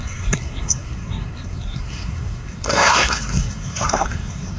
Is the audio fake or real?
fake